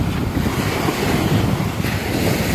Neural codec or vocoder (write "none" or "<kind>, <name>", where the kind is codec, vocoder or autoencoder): none